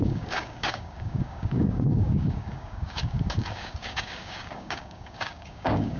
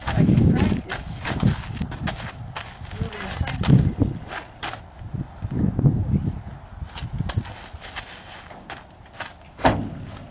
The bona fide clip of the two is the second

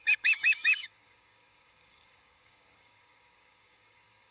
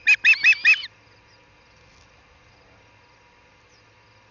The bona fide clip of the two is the second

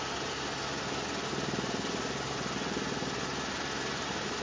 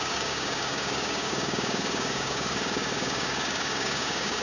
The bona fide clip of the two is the first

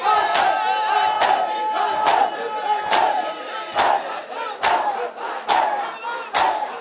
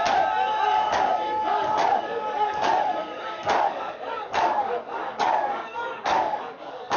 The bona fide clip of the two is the first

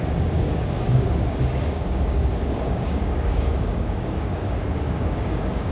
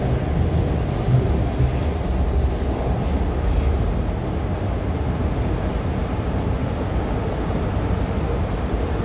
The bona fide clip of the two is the second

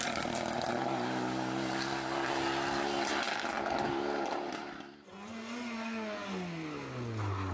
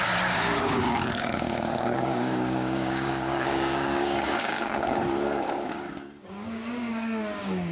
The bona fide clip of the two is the first